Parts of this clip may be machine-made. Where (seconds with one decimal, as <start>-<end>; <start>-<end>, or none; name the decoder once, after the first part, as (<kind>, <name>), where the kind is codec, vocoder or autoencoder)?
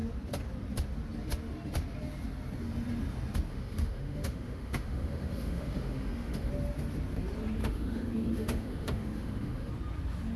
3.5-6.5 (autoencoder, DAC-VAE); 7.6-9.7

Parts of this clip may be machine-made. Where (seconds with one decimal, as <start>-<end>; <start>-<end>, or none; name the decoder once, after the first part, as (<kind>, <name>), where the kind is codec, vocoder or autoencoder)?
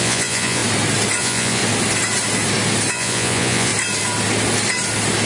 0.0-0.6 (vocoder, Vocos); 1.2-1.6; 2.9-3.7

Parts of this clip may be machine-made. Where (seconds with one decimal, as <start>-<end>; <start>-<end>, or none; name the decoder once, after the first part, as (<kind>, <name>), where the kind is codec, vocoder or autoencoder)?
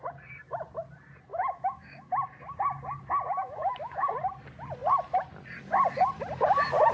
1.3-2.1 (autoencoder, DAC-VAE); 3.3-4.1